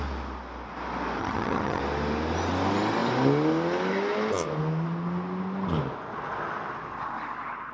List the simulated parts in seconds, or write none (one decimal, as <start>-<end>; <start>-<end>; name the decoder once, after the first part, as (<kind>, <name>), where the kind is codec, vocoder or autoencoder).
1.2-1.8 (vocoder, HiFi-GAN)